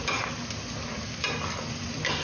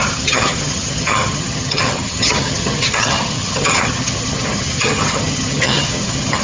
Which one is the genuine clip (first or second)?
first